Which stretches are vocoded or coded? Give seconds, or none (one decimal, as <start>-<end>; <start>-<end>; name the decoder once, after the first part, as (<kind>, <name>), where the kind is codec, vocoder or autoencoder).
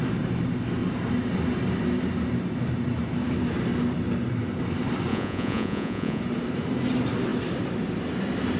5.1-6.2 (vocoder, Vocos)